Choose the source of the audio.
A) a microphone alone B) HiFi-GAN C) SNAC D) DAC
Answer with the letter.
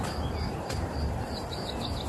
A